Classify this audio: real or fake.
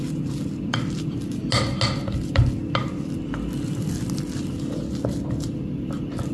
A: real